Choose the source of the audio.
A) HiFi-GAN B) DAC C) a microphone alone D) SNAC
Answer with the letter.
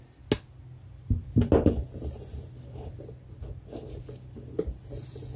C